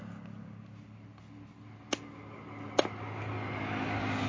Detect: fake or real real